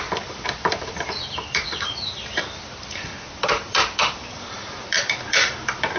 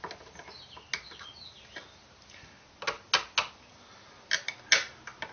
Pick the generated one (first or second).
first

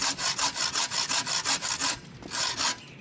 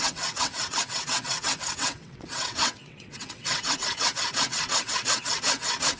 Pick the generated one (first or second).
second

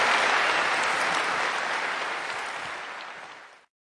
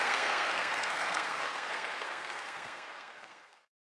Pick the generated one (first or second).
second